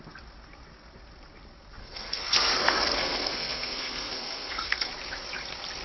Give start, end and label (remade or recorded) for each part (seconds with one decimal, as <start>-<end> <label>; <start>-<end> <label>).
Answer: 0.0-1.8 recorded; 1.8-4.9 remade; 4.9-5.8 recorded